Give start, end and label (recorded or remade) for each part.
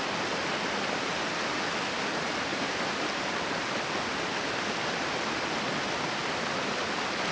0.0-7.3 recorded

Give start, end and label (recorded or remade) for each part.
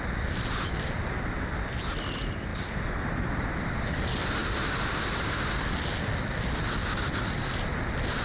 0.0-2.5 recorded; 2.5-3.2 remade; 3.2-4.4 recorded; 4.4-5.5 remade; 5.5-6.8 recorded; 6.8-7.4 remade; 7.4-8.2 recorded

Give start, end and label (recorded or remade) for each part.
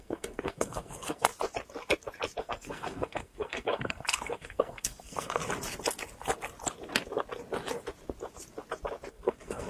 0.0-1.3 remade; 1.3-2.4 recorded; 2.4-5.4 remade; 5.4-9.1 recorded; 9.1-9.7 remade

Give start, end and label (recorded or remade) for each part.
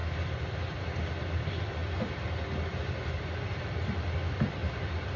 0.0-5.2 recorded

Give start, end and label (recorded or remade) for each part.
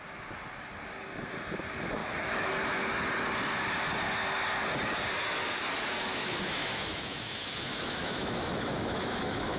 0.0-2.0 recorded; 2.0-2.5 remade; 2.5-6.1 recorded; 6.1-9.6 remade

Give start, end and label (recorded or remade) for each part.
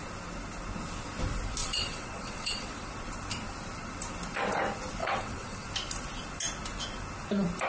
0.0-1.6 recorded; 1.6-2.9 remade; 2.9-5.0 recorded; 5.0-5.7 remade; 5.7-7.7 recorded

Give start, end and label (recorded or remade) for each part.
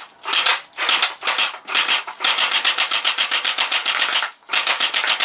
0.0-0.5 remade; 0.5-1.4 recorded; 1.4-5.2 remade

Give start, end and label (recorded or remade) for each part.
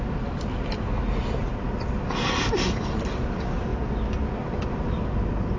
0.0-5.6 recorded